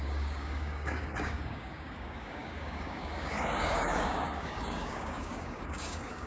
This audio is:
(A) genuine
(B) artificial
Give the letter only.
B